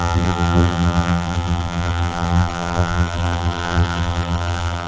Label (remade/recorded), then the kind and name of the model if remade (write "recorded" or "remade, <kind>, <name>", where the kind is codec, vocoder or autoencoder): remade, vocoder, BigVGAN v2